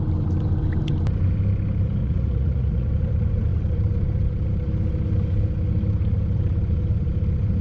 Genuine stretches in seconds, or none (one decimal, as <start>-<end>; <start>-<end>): 0.0-2.0; 2.9-7.6